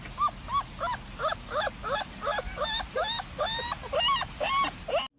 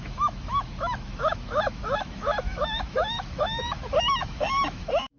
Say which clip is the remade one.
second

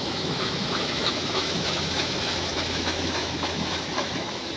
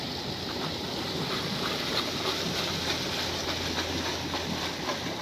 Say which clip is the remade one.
first